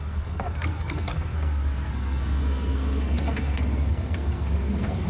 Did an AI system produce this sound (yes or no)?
yes